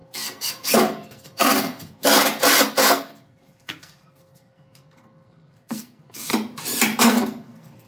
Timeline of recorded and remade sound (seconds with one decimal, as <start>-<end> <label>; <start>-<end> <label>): 0.0-2.2 remade; 2.2-2.8 recorded; 2.8-6.3 remade; 6.3-7.0 recorded; 7.0-7.9 remade